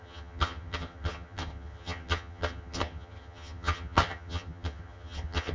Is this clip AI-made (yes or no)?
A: yes